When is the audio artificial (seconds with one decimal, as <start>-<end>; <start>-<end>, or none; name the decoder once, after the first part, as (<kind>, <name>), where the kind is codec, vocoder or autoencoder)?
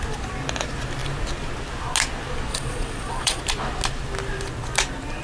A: 2.5-3.4 (vocoder, Vocos)